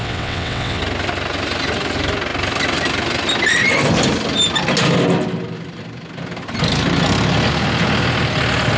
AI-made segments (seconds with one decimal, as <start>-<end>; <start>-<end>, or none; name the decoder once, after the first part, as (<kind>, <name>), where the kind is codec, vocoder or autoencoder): 0.0-0.8 (vocoder, WaveNeXt)